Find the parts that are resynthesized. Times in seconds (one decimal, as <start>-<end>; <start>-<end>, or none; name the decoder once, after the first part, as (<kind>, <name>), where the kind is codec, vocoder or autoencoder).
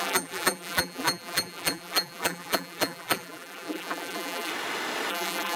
0.0-4.5 (vocoder, BigVGAN v2); 5.1-5.6